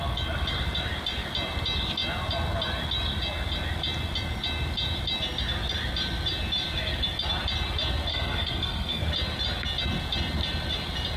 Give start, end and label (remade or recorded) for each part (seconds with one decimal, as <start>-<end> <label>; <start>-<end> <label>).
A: 0.0-8.1 recorded; 8.1-9.0 remade; 9.0-11.2 recorded